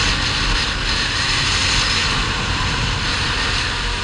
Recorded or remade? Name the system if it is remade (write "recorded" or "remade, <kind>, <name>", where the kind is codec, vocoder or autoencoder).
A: recorded